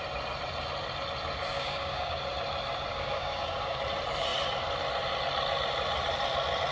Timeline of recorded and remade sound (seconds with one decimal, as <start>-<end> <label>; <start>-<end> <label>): 0.0-1.5 recorded; 1.5-2.2 remade; 2.2-2.9 recorded; 2.9-3.8 remade; 3.8-6.7 recorded